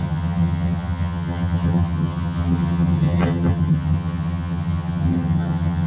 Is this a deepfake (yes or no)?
yes